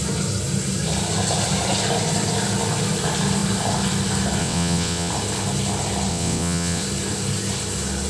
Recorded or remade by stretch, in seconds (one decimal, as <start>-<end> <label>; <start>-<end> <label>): 0.0-4.4 recorded; 4.4-5.1 remade; 5.1-6.1 recorded; 6.1-6.8 remade; 6.8-8.1 recorded